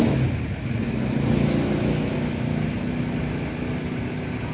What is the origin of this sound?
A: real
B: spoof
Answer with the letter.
A